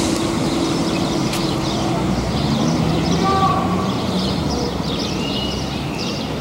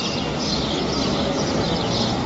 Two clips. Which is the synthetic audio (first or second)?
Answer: first